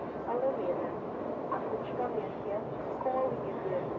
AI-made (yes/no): no